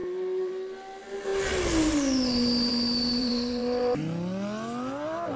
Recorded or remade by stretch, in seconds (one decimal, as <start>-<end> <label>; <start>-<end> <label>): 0.0-0.5 remade; 0.5-3.2 recorded; 3.2-4.0 remade; 4.0-5.4 recorded